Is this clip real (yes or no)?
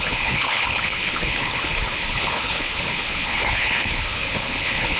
no